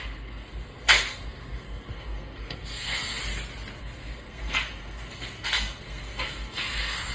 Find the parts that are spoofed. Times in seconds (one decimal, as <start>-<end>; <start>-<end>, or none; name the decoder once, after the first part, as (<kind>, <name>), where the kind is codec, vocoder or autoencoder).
0.0-3.2 (codec, SNAC); 3.8-7.1